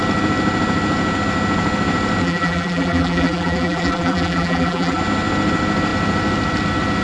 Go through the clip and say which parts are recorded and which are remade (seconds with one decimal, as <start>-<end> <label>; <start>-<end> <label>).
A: 0.0-2.2 recorded; 2.2-5.0 remade; 5.0-7.0 recorded